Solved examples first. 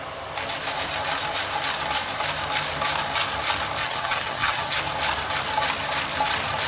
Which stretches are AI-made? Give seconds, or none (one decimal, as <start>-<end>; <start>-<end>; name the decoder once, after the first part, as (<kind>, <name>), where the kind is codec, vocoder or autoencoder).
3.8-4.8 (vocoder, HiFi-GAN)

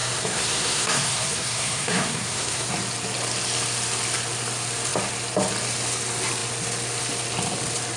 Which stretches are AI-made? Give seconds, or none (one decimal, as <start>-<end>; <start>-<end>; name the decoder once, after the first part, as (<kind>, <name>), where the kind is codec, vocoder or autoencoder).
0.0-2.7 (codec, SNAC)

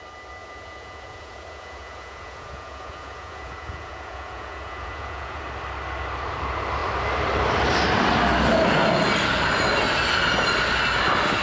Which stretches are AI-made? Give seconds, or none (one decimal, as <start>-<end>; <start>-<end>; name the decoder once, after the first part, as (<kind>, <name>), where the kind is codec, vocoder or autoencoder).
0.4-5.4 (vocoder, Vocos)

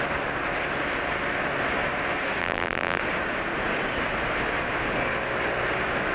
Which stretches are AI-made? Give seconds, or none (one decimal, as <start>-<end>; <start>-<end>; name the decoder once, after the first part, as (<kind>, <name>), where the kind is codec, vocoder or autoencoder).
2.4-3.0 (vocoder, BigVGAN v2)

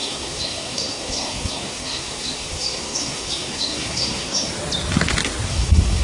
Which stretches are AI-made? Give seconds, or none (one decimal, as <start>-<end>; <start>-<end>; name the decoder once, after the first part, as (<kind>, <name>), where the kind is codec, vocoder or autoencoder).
0.0-4.5 (codec, SNAC); 5.5-6.0

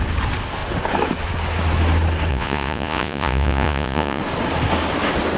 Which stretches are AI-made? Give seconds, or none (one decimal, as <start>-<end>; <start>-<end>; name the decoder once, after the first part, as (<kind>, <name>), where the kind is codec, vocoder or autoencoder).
2.3-4.2 (vocoder, Vocos)

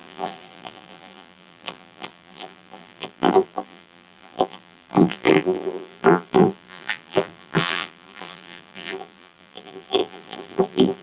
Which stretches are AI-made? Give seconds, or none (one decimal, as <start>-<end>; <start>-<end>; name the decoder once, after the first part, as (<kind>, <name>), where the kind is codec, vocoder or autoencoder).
0.0-11.0 (vocoder, BigVGAN v2)

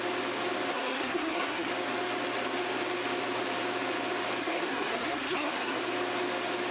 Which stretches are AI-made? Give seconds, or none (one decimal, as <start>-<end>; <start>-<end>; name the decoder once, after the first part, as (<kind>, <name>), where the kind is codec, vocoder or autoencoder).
0.7-1.7 (codec, SNAC); 4.4-5.8